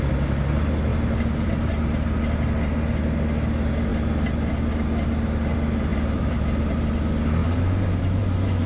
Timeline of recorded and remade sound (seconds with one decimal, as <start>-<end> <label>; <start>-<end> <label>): 0.0-0.9 recorded; 0.9-1.7 remade; 1.7-5.9 recorded; 5.9-6.6 remade; 6.6-7.4 recorded; 7.4-8.7 remade